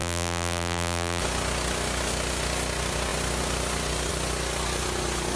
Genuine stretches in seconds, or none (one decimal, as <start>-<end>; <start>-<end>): 1.2-5.4